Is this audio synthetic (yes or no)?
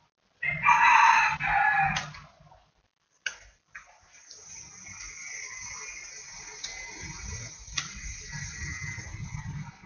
no